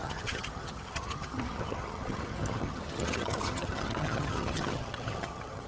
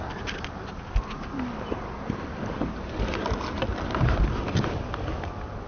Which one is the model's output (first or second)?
first